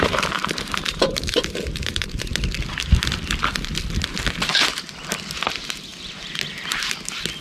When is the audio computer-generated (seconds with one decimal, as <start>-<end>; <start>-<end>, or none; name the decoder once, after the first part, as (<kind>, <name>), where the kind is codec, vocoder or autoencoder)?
0.0-2.3 (vocoder, BigVGAN v2); 5.5-5.9